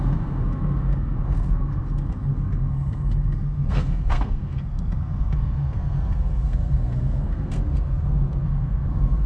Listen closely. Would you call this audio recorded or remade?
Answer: remade